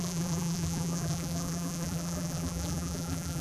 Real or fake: fake